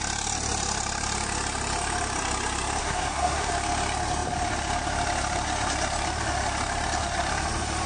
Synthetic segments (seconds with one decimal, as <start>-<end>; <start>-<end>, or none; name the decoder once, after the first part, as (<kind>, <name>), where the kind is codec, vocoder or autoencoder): 2.8-3.5 (codec, SNAC)